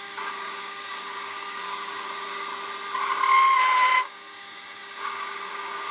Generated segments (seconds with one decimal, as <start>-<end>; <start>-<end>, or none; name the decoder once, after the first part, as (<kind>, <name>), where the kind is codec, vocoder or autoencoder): 0.0-2.5 (codec, DAC); 4.0-5.9